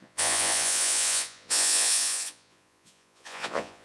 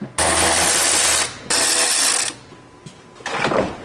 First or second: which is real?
second